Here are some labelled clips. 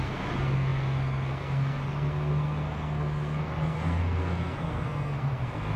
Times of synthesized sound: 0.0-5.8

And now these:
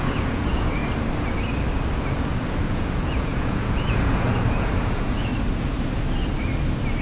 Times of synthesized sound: 0.0-0.8; 2.2-5.3

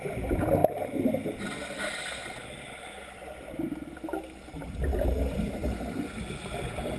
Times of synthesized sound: none